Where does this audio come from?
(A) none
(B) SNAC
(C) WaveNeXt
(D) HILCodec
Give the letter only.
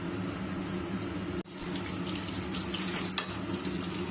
A